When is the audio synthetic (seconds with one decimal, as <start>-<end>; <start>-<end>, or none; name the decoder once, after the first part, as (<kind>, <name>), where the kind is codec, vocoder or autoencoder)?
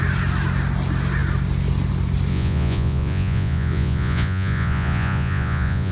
2.3-5.9 (vocoder, Vocos)